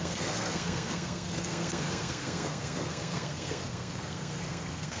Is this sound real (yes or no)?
no